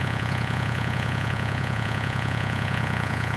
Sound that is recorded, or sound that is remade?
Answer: remade